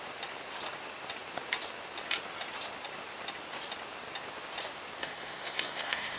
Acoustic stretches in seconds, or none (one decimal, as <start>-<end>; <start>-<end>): 0.0-5.0